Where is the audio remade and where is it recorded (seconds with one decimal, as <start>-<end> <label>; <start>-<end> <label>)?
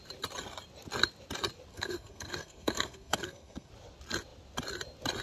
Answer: 0.0-1.7 recorded; 1.7-3.7 remade; 3.7-5.2 recorded